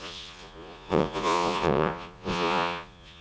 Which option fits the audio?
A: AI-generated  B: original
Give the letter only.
A